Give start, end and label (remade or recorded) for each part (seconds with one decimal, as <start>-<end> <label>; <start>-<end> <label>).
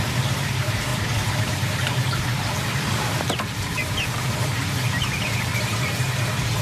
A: 0.0-0.9 remade; 0.9-1.4 recorded; 1.4-6.6 remade